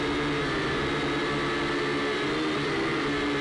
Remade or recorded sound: recorded